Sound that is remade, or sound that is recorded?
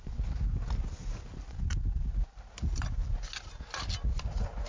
recorded